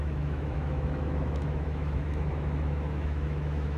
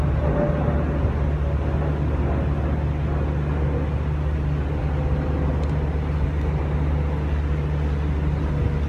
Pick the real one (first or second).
second